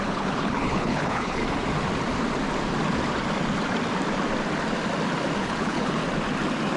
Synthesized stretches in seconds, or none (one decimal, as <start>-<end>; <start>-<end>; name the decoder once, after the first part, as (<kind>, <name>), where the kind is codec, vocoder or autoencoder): 0.0-1.4 (codec, HILCodec); 5.4-6.0